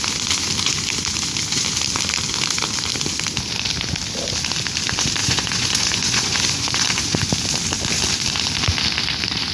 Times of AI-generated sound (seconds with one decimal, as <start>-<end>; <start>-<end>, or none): 5.2-7.3